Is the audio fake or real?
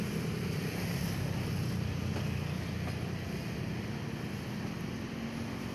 real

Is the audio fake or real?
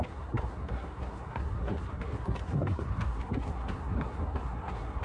fake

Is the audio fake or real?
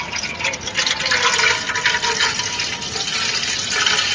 real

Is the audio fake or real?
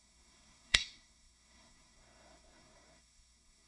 fake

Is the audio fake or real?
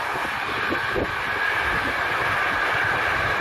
real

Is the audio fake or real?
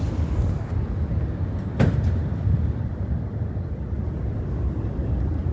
real